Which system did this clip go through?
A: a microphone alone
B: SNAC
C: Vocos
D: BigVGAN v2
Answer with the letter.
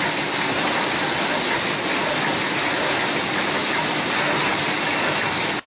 A